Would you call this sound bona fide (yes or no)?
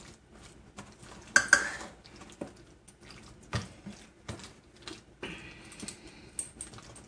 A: yes